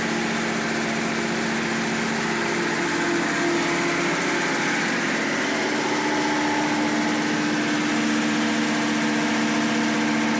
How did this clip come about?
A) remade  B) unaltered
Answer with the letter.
B